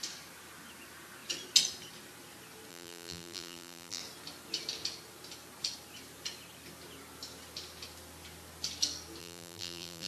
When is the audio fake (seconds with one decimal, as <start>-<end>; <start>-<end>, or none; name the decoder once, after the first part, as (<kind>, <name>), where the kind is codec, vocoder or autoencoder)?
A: 2.7-4.0 (vocoder, BigVGAN v2); 9.2-10.1